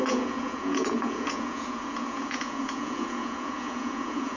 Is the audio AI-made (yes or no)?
yes